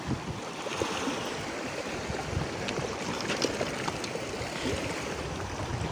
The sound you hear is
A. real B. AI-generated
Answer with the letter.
A